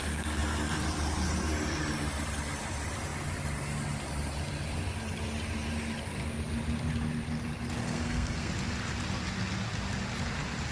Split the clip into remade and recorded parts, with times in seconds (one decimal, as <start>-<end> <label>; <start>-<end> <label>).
0.0-7.8 recorded; 7.8-8.5 remade; 8.5-10.7 recorded